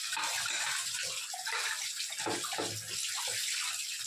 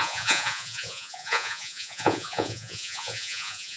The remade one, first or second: second